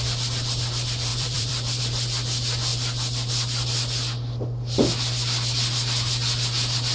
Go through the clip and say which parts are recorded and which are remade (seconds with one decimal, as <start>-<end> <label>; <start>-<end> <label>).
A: 0.0-1.1 recorded; 1.1-1.8 remade; 1.8-6.9 recorded